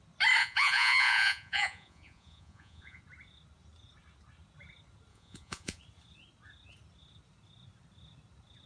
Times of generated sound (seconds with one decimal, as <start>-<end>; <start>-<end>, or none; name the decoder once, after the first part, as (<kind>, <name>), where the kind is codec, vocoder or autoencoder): 0.4-3.0 (vocoder, Vocos); 5.1-5.8